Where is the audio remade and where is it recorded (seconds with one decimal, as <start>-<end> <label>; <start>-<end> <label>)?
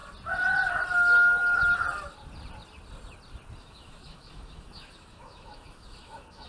0.0-3.6 recorded; 3.6-6.5 remade